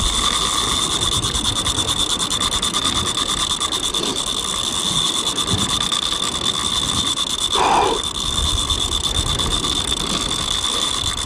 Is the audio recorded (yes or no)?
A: yes